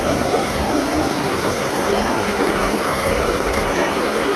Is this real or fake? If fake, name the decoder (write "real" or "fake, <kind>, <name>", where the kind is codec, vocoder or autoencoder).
fake, codec, SNAC